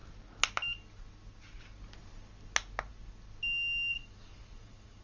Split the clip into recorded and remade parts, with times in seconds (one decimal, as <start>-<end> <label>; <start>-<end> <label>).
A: 0.0-3.9 recorded; 3.9-5.0 remade